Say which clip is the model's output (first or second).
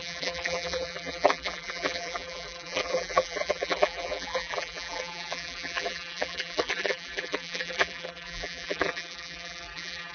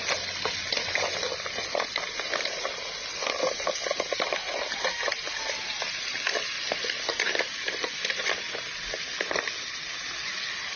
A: first